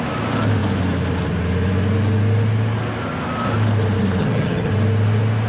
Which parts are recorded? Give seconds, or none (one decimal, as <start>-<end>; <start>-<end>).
0.0-4.2; 4.7-5.5